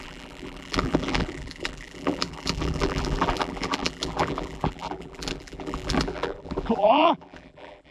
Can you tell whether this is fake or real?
fake